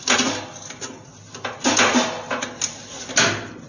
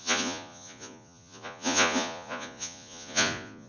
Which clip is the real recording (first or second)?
first